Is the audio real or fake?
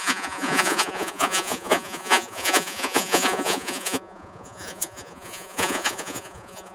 fake